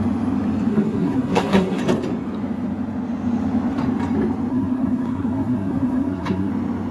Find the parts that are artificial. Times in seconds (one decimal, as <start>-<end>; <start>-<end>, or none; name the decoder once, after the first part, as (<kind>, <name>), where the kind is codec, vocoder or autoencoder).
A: 0.7-1.8 (codec, SNAC); 4.5-6.5